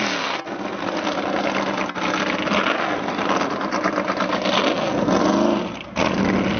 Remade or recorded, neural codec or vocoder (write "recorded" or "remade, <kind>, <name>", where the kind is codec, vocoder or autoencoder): recorded